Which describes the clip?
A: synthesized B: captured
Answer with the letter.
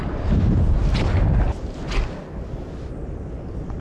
B